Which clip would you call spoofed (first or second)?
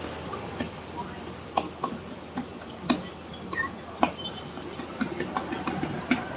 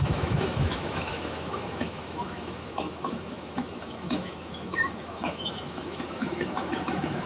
second